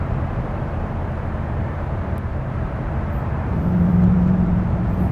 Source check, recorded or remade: remade